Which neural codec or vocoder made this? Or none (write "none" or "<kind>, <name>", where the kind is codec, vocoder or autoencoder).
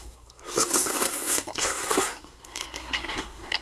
codec, SNAC